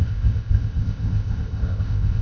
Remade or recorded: remade